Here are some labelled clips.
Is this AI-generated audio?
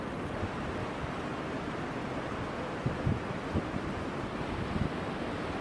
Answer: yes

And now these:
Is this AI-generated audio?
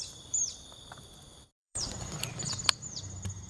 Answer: yes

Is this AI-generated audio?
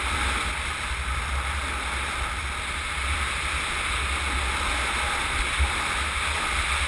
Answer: no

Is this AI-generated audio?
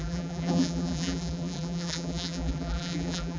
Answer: yes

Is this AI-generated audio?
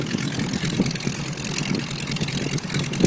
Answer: no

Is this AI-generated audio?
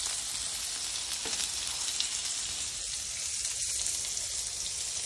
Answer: no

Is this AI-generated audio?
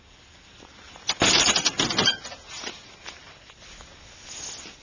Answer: no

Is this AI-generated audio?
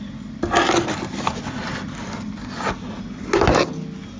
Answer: no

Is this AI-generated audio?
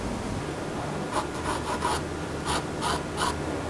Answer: no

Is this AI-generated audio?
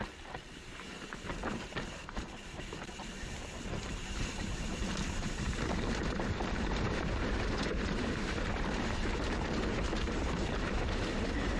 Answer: yes